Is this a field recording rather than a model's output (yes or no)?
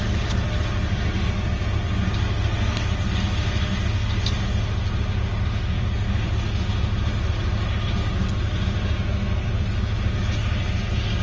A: yes